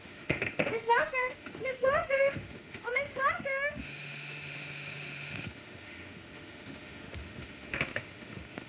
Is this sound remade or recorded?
remade